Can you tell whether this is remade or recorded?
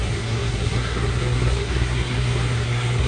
remade